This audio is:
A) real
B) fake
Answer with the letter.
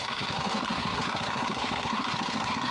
B